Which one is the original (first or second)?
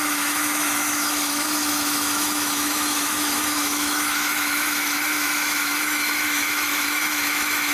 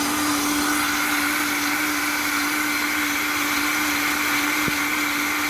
second